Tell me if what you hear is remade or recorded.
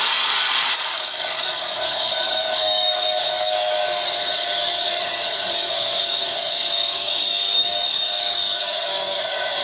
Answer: remade